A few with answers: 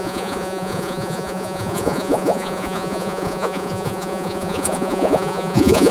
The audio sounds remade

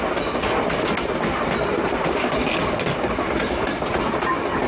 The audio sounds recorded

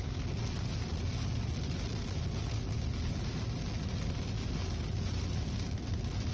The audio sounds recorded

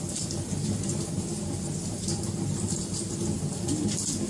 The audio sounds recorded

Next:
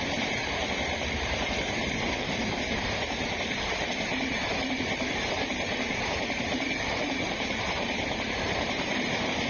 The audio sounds remade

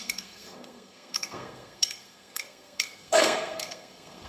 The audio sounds remade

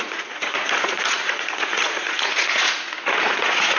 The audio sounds remade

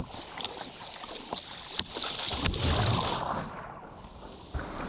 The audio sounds recorded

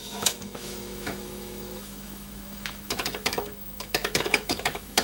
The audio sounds remade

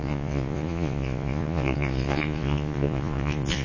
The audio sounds remade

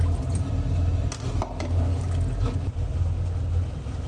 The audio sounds recorded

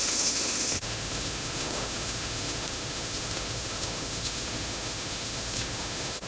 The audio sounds remade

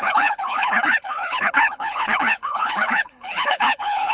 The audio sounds remade